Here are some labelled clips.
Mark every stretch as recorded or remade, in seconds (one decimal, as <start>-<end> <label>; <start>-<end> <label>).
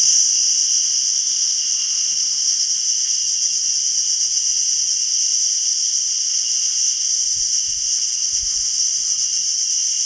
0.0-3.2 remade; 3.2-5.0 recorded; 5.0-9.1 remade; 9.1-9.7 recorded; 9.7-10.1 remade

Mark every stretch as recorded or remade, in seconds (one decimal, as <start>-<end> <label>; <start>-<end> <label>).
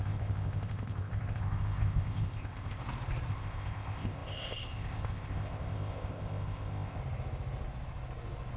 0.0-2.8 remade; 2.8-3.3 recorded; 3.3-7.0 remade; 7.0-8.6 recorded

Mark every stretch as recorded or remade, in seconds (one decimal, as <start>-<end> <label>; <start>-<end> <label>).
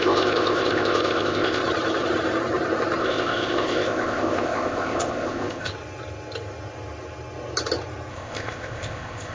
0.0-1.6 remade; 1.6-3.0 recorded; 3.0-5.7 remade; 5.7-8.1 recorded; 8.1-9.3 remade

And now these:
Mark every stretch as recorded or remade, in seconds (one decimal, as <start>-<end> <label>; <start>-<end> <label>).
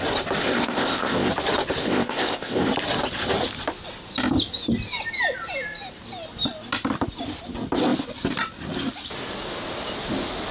0.0-0.4 recorded; 0.4-1.3 remade; 1.3-1.8 recorded; 1.8-2.7 remade; 2.7-10.5 recorded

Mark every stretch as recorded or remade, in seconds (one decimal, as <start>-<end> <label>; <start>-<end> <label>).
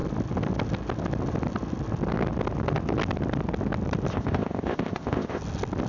0.0-4.1 recorded; 4.1-5.4 remade; 5.4-5.9 recorded